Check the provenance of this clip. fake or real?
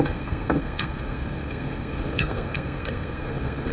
fake